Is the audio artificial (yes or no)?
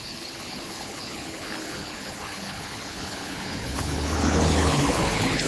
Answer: yes